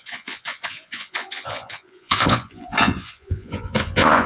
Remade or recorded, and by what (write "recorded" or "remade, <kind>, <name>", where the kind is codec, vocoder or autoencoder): remade, vocoder, Vocos